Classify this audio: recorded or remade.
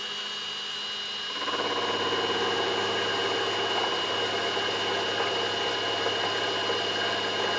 recorded